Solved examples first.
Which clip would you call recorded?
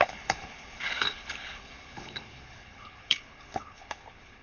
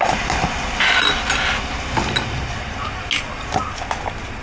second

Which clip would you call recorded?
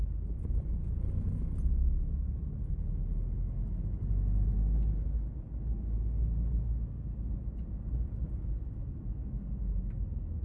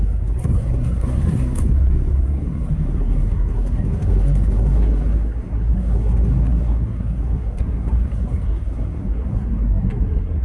first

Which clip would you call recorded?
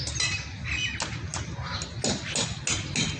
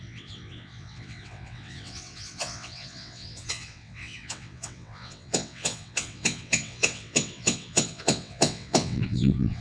first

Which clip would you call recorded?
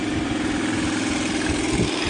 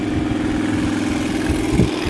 second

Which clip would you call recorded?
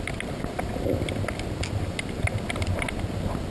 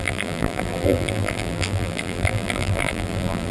first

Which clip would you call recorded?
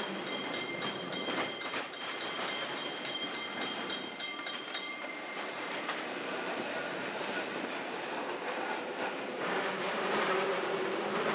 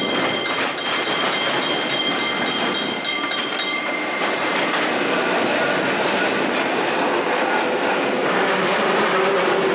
second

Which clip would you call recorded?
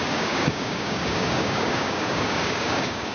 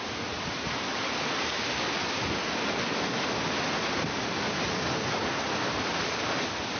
second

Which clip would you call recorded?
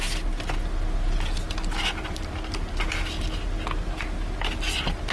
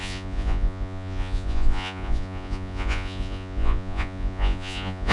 first